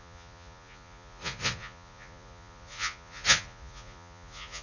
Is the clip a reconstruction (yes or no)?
yes